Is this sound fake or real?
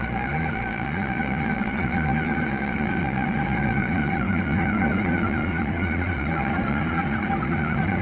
fake